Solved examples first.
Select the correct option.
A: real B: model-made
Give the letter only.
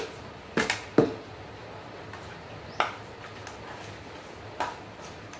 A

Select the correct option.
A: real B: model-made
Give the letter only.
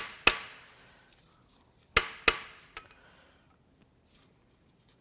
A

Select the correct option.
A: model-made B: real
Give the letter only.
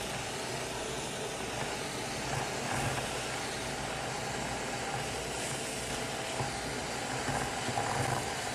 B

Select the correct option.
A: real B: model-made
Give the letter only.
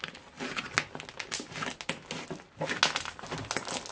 A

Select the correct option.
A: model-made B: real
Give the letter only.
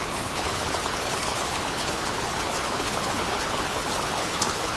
A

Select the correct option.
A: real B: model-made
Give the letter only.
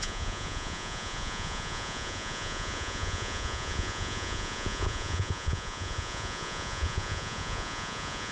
B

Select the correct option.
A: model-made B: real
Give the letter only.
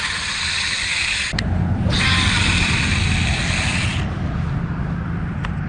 B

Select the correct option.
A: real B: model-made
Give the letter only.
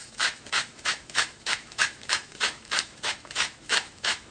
B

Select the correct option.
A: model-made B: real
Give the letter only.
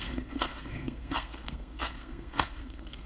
A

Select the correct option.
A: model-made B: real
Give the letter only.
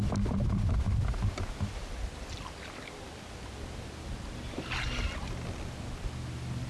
B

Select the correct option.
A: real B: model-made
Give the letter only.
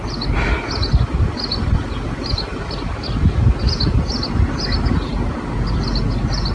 A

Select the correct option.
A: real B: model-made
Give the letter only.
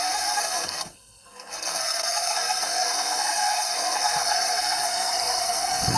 B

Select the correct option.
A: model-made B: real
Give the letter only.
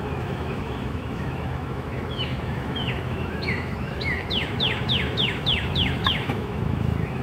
A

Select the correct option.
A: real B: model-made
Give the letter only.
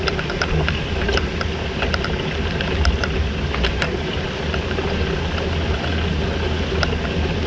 A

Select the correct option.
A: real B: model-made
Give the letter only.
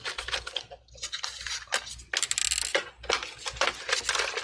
A